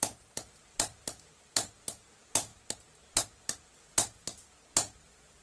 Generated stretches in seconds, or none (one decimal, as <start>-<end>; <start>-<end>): none